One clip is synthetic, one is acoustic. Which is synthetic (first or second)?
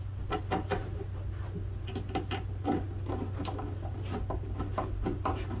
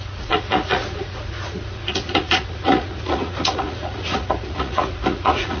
second